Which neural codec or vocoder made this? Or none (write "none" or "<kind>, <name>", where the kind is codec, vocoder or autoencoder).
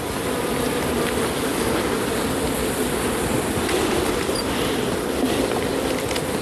none